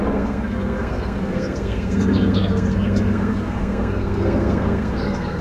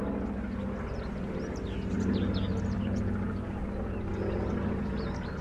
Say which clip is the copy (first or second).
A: first